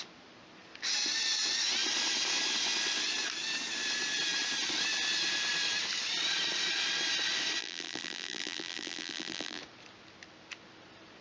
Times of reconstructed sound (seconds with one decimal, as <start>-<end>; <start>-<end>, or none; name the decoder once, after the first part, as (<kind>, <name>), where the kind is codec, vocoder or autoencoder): 7.6-9.6 (vocoder, BigVGAN v2)